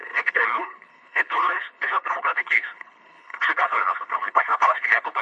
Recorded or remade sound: remade